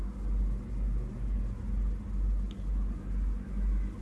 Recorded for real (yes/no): yes